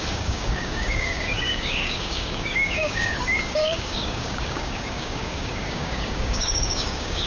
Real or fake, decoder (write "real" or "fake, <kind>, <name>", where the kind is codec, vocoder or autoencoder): fake, codec, DAC